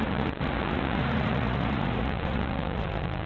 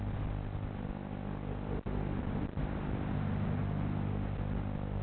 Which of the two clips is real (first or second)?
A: second